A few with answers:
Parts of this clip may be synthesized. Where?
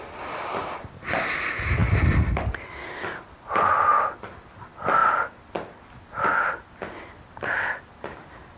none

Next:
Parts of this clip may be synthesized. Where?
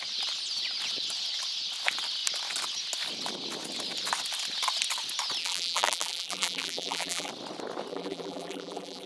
5.4-7.3 (vocoder, BigVGAN v2); 7.9-9.1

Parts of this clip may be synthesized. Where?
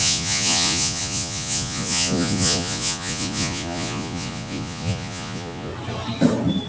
0.0-5.7 (vocoder, Vocos)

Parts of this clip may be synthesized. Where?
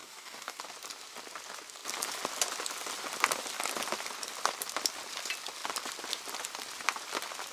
0.0-0.6 (codec, DAC)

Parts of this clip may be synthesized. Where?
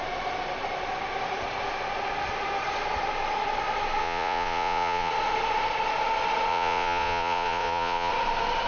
4.0-5.1 (vocoder, Vocos); 6.5-8.1